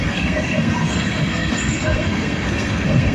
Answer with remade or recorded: remade